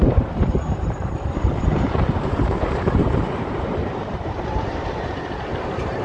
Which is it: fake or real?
fake